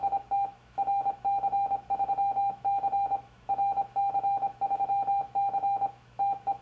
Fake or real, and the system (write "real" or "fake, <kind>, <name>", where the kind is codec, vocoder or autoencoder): fake, autoencoder, DAC-VAE